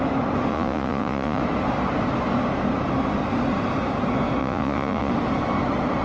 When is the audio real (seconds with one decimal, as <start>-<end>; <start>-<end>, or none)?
0.0-0.5; 1.4-4.4; 5.1-6.0